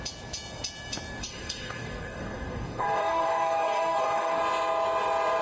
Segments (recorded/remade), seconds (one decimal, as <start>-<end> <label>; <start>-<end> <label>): 0.0-1.2 recorded; 1.2-4.4 remade; 4.4-5.4 recorded